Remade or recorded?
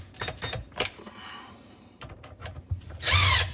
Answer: remade